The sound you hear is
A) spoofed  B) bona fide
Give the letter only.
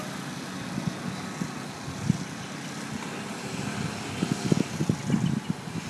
B